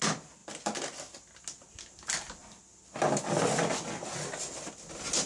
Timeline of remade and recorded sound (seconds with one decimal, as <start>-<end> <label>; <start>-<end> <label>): 0.0-5.3 recorded